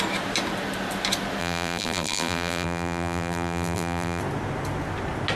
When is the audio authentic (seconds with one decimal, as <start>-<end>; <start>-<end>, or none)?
0.0-1.4; 4.2-5.4

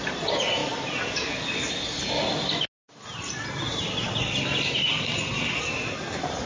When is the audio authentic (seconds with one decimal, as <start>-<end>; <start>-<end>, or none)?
0.0-6.5